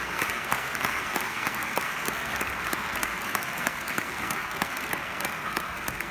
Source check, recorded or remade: remade